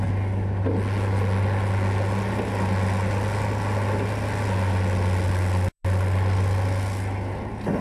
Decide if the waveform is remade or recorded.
recorded